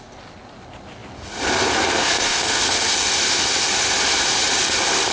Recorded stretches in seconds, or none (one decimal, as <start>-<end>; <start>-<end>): 0.0-2.0; 2.9-5.1